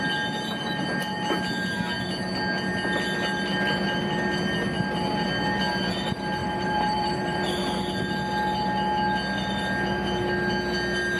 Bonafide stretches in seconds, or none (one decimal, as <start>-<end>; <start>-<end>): 0.0-6.4; 7.4-11.2